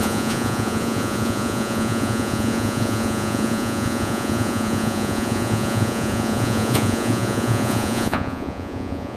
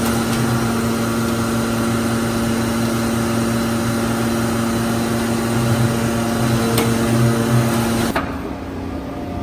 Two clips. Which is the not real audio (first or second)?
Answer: first